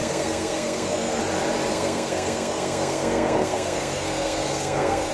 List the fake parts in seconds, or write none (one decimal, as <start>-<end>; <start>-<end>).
0.0-1.2; 1.7-5.1